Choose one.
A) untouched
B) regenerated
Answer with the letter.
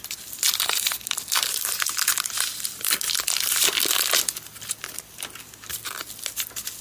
A